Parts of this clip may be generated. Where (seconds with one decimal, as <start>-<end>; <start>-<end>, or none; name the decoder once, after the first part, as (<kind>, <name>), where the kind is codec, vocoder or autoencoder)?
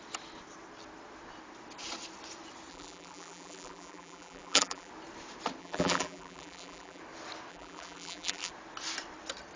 2.7-4.9 (vocoder, BigVGAN v2); 5.6-7.0; 7.5-8.5